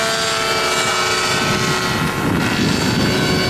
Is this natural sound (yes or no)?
yes